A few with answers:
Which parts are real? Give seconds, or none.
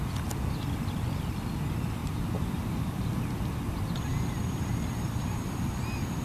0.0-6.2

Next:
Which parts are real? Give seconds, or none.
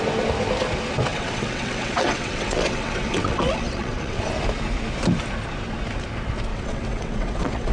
0.0-1.1; 4.2-6.5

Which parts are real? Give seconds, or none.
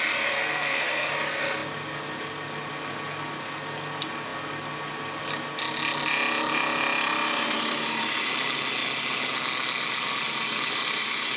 0.0-0.5; 1.1-11.4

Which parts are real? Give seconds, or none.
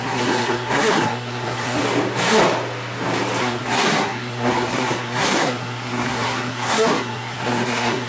1.8-3.4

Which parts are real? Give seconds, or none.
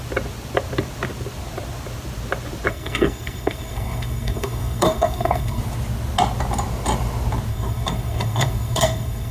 0.0-2.7; 5.6-7.5